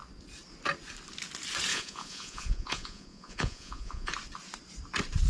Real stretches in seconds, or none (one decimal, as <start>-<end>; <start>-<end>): 0.0-1.7; 4.1-5.3